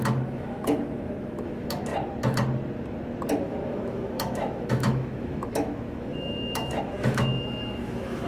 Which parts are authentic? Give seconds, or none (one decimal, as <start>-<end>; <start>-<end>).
1.9-3.4